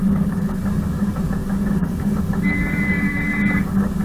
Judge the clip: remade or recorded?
remade